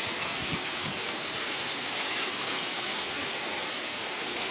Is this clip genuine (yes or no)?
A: no